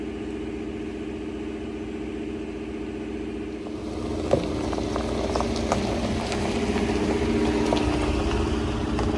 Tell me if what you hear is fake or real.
real